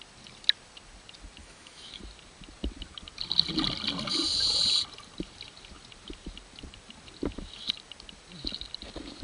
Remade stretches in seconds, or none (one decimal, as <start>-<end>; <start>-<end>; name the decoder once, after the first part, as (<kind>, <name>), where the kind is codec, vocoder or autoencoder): 1.4-2.0 (autoencoder, DAC-VAE)